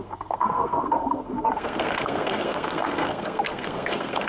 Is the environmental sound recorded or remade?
remade